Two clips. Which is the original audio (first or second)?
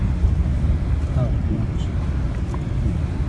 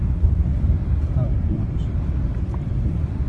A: first